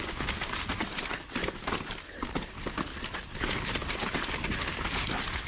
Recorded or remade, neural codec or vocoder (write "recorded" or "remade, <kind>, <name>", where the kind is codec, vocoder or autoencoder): recorded